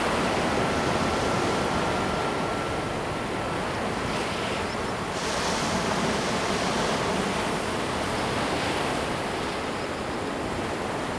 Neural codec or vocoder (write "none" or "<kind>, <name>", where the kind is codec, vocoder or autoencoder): none